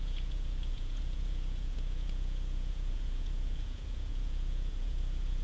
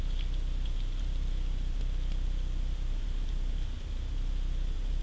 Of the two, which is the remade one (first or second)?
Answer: first